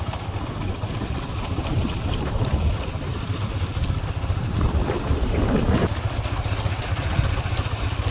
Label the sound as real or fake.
fake